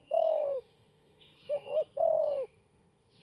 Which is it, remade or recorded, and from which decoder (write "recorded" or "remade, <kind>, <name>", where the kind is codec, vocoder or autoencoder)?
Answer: remade, autoencoder, DAC-VAE